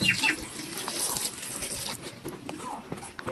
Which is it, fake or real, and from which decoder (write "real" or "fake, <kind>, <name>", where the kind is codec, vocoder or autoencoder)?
real